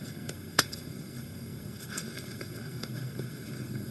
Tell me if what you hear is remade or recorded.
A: remade